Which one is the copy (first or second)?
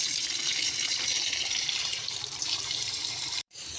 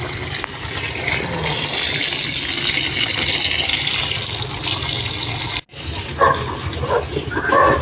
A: first